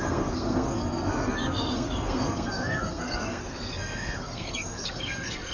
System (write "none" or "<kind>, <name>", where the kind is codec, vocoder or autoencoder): codec, SNAC